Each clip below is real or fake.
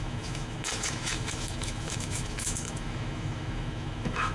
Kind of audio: fake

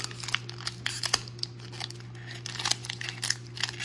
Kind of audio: real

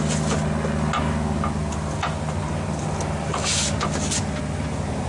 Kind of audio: real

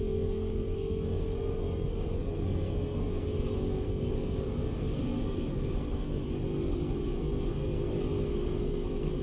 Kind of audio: fake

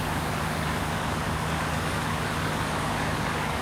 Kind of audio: fake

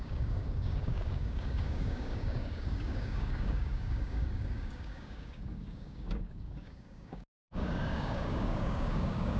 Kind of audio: fake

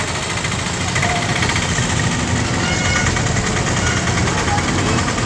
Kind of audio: real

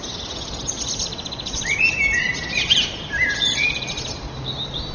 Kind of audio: real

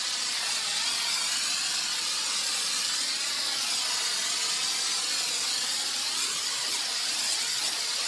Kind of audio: real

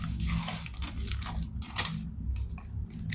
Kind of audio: real